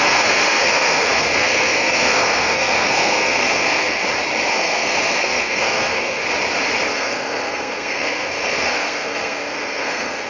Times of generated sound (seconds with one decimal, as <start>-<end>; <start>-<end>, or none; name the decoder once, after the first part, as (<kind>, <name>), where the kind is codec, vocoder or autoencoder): 0.0-4.0 (codec, SNAC); 4.5-6.2; 6.9-10.3

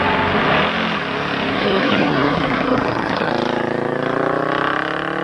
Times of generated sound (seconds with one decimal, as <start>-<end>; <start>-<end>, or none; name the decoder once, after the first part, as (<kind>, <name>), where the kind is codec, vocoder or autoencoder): 1.5-3.3 (codec, SNAC)